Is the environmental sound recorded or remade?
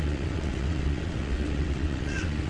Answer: remade